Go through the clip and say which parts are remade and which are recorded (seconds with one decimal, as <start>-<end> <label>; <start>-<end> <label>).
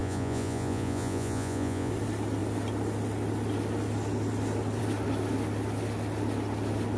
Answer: 0.0-1.9 remade; 1.9-7.0 recorded